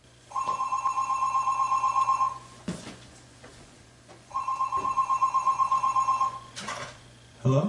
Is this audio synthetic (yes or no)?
yes